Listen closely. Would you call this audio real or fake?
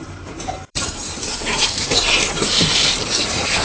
fake